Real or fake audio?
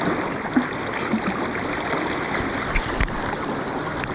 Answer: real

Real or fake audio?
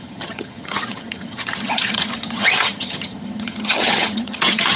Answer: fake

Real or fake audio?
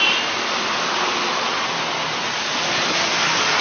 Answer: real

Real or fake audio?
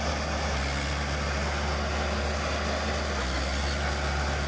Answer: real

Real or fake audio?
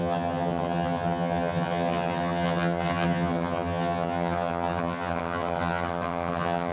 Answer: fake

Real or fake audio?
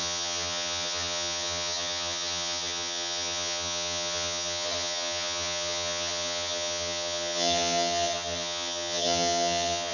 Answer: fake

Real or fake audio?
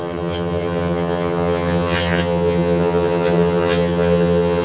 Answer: fake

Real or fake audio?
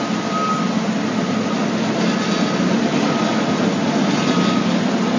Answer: real